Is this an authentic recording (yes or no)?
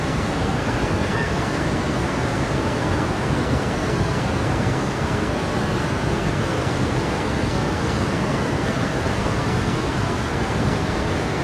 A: no